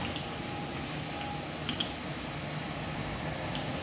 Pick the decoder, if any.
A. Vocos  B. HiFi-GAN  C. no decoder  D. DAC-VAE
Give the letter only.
C